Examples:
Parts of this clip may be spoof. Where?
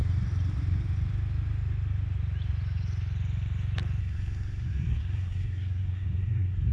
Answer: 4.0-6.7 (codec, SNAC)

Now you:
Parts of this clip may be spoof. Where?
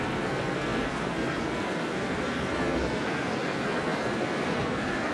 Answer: 0.0-5.1 (codec, SNAC)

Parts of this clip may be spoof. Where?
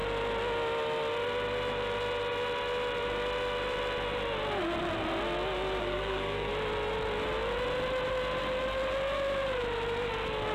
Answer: 5.8-6.5 (codec, SNAC)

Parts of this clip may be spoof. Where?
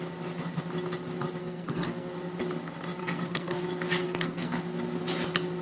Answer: 1.4-2.1 (codec, SNAC); 3.0-3.6; 4.0-4.6